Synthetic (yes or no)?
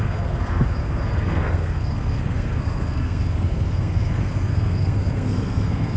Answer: yes